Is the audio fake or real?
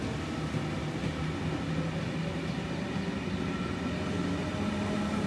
real